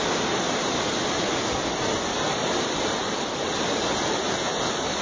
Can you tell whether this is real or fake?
real